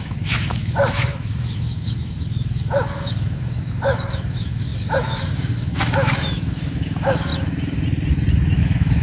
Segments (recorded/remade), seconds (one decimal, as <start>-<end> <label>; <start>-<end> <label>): 0.0-7.3 remade; 7.3-8.6 recorded; 8.6-9.0 remade